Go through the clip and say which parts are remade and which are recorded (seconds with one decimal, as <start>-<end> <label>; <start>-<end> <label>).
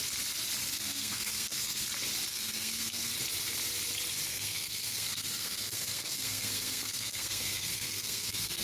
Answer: 0.0-0.7 recorded; 0.7-1.8 remade; 1.8-2.3 recorded; 2.3-3.1 remade; 3.1-4.3 recorded; 4.3-8.6 remade